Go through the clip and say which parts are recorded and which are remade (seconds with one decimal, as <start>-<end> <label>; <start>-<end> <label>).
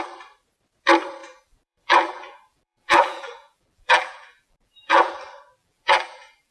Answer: 0.0-1.2 recorded; 1.2-5.1 remade; 5.1-5.6 recorded; 5.6-6.5 remade